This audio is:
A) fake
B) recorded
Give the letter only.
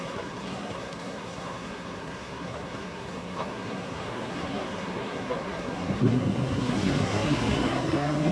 A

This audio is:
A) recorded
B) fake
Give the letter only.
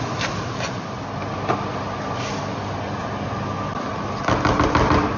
A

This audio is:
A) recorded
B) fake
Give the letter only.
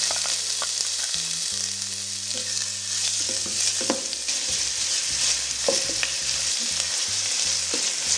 A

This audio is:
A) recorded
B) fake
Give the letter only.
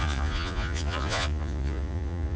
B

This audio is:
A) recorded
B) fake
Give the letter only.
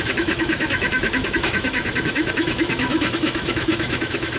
B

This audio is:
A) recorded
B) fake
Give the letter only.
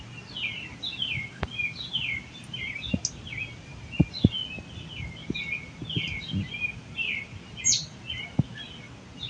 A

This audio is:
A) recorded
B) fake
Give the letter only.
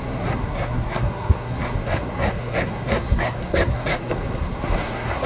B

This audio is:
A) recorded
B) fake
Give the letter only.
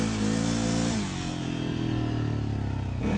A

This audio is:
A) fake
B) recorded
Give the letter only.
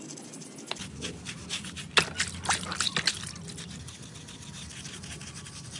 B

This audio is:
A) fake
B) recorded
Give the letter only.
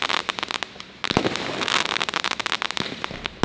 B